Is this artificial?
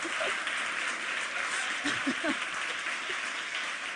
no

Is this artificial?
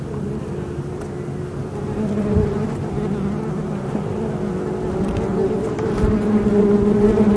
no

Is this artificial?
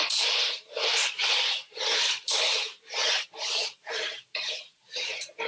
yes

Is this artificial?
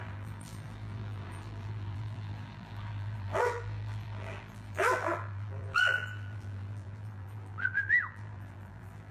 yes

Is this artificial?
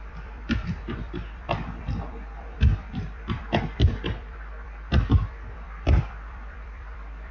yes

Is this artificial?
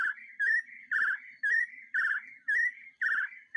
yes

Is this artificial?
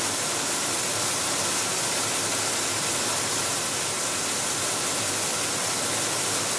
no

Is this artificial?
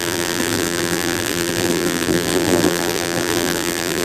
yes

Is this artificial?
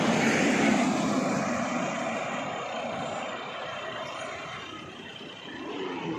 yes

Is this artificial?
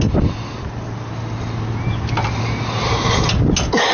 no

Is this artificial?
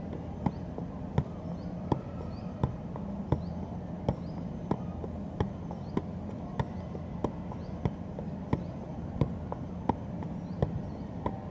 no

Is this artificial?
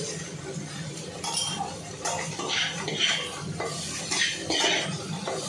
no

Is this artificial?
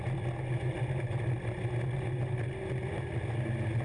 no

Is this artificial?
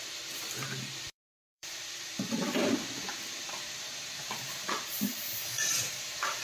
yes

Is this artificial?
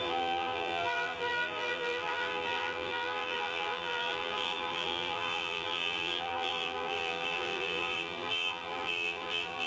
yes